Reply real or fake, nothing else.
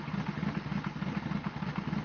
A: real